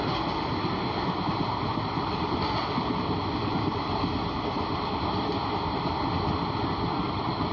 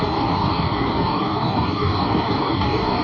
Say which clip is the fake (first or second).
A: second